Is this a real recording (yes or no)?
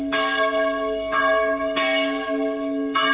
no